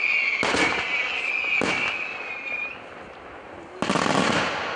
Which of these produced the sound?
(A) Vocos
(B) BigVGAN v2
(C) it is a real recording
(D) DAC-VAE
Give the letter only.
C